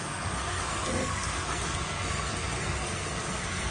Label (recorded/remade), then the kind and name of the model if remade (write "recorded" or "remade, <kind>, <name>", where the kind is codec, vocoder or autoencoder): remade, codec, SNAC